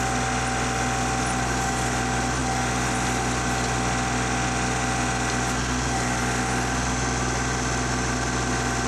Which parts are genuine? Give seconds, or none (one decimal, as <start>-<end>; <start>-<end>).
0.0-8.9